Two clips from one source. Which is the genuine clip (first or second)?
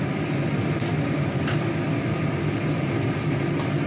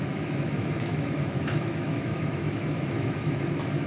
first